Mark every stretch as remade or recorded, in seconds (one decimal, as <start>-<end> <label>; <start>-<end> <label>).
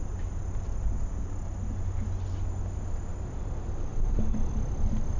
0.0-5.2 recorded